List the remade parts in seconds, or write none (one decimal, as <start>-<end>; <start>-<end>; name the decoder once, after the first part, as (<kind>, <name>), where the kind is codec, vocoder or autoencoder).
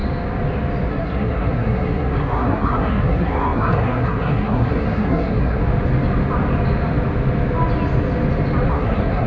0.9-5.6 (codec, SNAC); 8.7-9.3